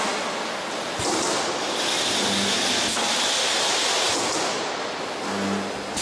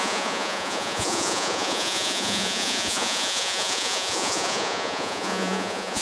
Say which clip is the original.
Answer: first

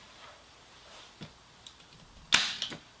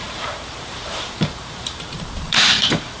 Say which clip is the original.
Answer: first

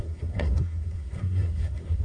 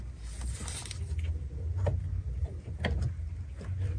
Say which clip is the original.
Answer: second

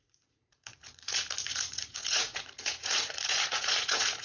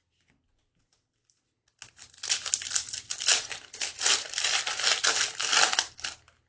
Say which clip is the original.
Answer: second